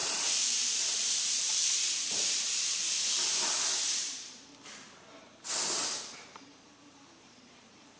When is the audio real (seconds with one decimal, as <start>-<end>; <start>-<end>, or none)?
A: 4.5-6.4